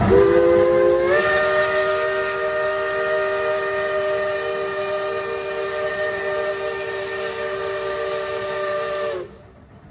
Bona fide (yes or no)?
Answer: yes